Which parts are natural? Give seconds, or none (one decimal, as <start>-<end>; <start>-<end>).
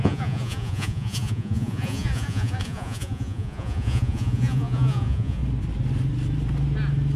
5.4-7.2